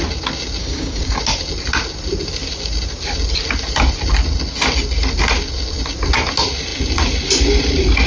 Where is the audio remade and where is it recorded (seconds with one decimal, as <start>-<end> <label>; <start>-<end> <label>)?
0.0-0.6 recorded; 0.6-1.2 remade; 1.2-8.1 recorded

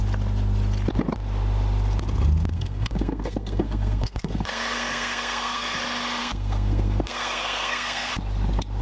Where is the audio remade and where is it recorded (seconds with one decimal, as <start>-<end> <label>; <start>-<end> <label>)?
0.0-2.5 recorded; 2.5-5.8 remade; 5.8-6.2 recorded; 6.2-8.1 remade; 8.1-8.8 recorded

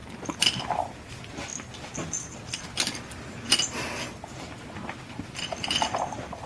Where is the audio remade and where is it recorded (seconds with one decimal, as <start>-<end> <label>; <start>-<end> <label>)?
0.0-6.5 recorded

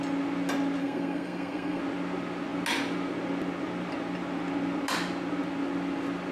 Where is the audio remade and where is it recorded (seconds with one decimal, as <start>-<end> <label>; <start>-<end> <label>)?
0.0-0.8 recorded; 0.8-1.8 remade; 1.8-6.3 recorded

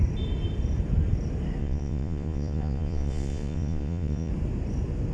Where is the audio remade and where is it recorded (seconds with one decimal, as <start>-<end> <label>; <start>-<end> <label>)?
0.0-1.6 recorded; 1.6-4.3 remade; 4.3-5.1 recorded

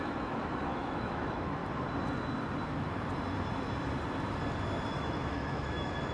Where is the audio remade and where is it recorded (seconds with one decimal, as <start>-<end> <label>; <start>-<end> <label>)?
0.0-1.6 remade; 1.6-4.9 recorded; 4.9-6.1 remade

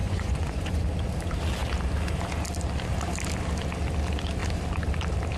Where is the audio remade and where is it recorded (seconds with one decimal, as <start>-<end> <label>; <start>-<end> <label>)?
0.0-0.8 remade; 0.8-5.4 recorded

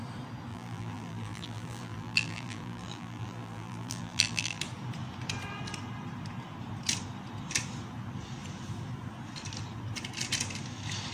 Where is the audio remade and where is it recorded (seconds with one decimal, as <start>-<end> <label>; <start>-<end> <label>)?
0.0-0.5 recorded; 0.5-4.6 remade; 4.6-11.1 recorded